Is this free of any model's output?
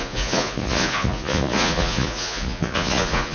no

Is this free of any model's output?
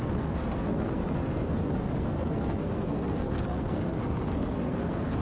no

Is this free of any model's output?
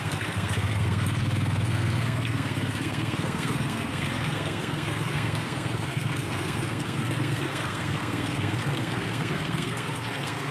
no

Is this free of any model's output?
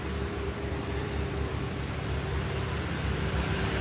no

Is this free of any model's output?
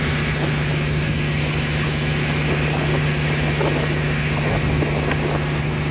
yes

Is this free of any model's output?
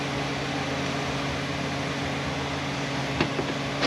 yes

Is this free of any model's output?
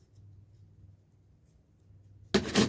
yes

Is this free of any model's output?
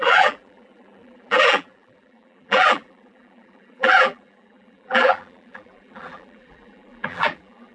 no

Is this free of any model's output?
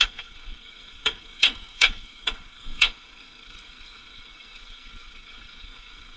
no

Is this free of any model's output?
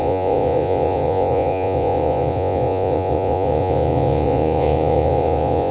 no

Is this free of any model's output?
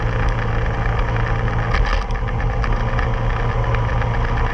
yes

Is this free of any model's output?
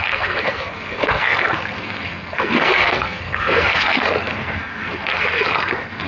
no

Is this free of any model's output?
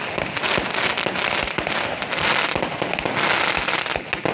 yes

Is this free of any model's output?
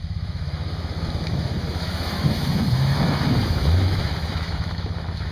no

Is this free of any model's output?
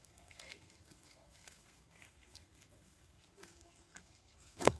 no